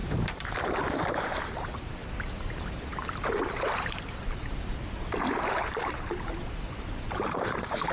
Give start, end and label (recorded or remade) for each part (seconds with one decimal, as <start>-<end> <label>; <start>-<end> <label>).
0.0-1.0 recorded; 1.0-2.0 remade; 2.0-5.4 recorded; 5.4-7.9 remade